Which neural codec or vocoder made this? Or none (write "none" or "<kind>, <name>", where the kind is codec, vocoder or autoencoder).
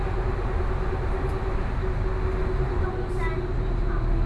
none